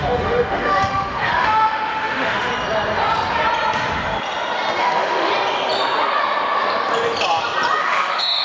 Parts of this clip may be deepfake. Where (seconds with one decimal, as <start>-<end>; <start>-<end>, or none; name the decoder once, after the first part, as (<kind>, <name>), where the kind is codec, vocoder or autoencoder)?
0.0-2.5 (autoencoder, DAC-VAE); 4.8-5.3; 7.8-8.4

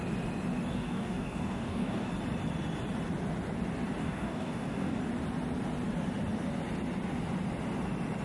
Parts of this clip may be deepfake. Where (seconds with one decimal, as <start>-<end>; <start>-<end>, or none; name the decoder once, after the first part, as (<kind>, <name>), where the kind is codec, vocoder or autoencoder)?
0.7-2.1 (codec, DAC); 4.0-5.0

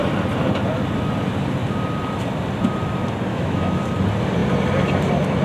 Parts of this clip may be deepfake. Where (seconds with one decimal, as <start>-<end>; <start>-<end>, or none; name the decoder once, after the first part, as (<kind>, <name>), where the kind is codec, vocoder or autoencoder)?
3.3-3.8 (autoencoder, DAC-VAE)

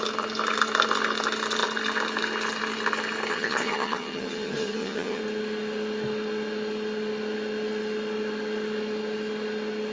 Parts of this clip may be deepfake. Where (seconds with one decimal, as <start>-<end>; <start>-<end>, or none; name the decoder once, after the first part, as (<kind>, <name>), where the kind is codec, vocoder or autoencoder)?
3.3-5.2 (vocoder, HiFi-GAN)

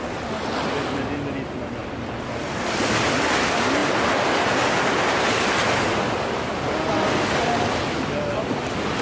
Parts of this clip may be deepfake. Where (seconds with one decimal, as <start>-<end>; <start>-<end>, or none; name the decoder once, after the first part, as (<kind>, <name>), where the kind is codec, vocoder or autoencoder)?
none

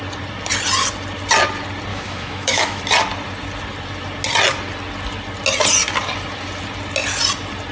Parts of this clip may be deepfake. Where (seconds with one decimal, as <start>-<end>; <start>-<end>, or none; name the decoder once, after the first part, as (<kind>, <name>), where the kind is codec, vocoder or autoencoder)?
1.9-2.8 (autoencoder, DAC-VAE)

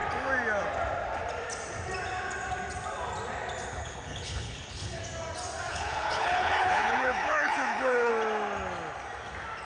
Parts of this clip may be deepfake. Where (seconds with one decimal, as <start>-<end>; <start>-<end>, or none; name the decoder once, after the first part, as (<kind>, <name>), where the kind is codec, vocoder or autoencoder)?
3.7-5.0 (codec, HILCodec); 5.7-8.1

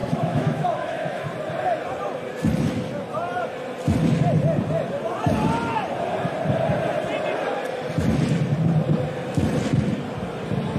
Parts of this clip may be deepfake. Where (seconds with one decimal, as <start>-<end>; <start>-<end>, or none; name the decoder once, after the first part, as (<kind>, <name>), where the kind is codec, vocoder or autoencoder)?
0.0-1.2 (autoencoder, DAC-VAE)